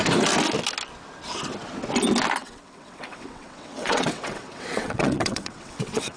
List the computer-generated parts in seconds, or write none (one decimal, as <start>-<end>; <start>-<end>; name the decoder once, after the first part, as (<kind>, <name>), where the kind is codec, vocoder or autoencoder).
2.4-6.2 (vocoder, WaveNeXt)